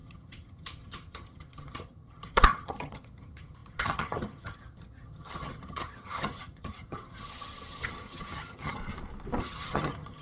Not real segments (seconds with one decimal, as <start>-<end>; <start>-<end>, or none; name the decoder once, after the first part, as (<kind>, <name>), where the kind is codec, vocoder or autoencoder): 0.0-8.8 (vocoder, HiFi-GAN); 9.4-10.2